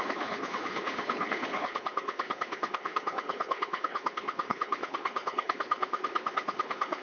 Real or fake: fake